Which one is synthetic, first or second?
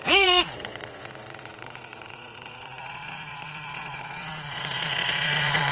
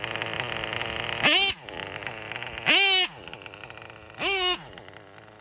first